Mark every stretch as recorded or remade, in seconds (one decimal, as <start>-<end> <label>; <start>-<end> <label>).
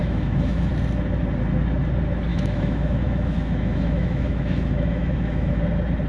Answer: 0.0-0.7 remade; 0.7-2.3 recorded; 2.3-5.6 remade; 5.6-6.1 recorded